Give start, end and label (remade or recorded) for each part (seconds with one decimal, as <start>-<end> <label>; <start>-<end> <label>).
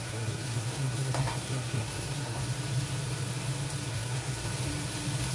0.0-2.4 remade; 2.4-3.9 recorded; 3.9-4.5 remade; 4.5-5.3 recorded